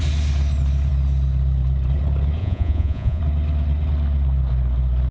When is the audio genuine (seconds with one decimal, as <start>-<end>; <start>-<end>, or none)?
0.0-2.4; 3.2-5.1